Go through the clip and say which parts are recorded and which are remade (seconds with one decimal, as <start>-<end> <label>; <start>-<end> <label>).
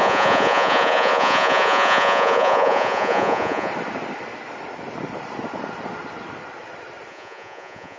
0.0-3.7 remade; 3.7-7.1 recorded; 7.1-8.0 remade